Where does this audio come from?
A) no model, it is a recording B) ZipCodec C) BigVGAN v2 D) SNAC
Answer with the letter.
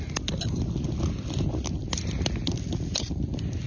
A